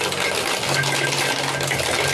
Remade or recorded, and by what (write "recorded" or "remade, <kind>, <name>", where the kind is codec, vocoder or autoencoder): recorded